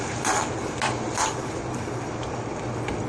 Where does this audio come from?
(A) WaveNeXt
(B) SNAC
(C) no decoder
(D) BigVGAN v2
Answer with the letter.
C